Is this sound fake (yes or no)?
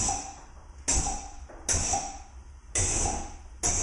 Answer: no